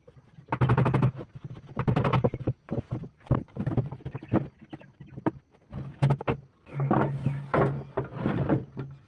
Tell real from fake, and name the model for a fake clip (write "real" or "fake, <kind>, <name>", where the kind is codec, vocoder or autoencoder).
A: real